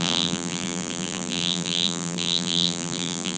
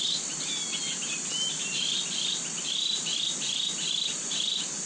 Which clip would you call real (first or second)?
second